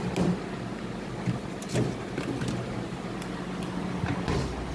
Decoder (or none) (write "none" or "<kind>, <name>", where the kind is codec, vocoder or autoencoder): none